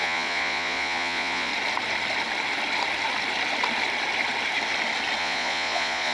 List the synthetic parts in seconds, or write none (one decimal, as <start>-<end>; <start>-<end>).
0.0-1.5; 5.2-6.1